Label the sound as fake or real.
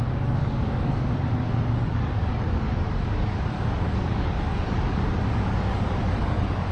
fake